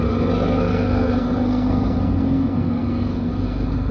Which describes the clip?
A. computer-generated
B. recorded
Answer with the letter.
A